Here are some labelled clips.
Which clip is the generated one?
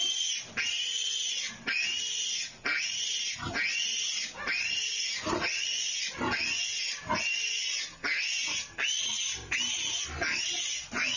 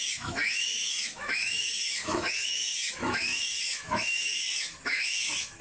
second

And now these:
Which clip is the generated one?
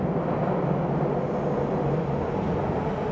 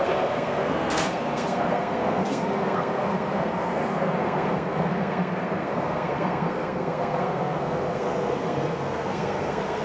second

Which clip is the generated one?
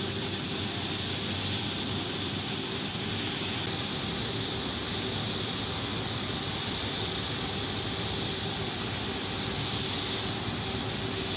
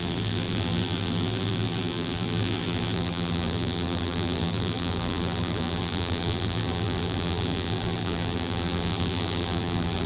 second